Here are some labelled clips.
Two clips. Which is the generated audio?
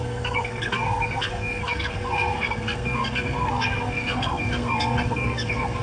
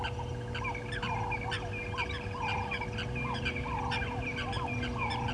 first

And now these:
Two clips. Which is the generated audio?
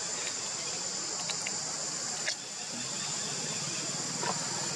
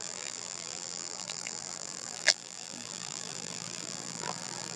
second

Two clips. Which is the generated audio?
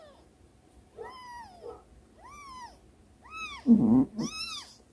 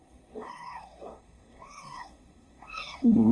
second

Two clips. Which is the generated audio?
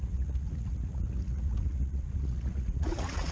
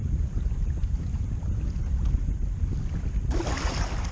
first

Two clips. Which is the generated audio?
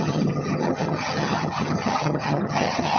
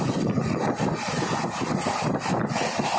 first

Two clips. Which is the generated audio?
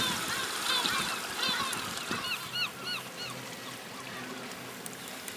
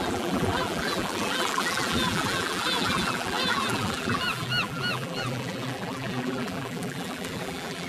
second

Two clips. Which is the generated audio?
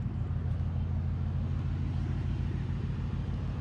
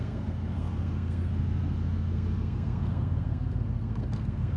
second